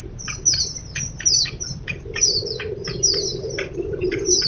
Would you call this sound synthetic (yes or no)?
no